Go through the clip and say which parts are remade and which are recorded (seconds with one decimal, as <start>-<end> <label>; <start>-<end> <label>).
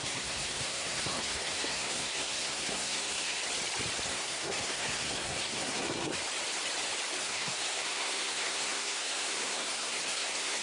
0.0-3.4 remade; 3.4-4.1 recorded; 4.1-6.1 remade; 6.1-7.2 recorded; 7.2-10.6 remade